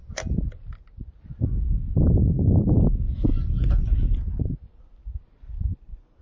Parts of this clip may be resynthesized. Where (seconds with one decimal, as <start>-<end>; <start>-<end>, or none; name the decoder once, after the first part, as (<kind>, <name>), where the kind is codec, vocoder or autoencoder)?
none